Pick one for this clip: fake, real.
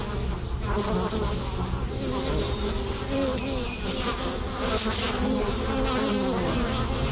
real